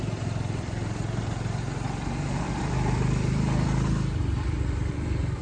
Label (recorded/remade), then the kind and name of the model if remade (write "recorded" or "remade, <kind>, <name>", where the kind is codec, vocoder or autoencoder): remade, vocoder, BigVGAN v2